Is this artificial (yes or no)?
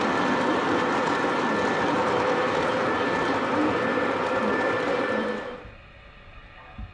no